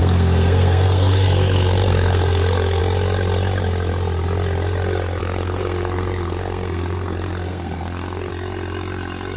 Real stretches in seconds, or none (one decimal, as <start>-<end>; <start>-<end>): 2.8-5.2; 8.3-9.4